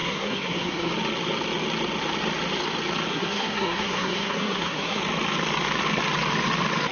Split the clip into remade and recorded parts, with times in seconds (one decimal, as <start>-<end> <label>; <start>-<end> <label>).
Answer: 0.0-0.9 remade; 0.9-3.1 recorded; 3.1-5.0 remade; 5.0-6.9 recorded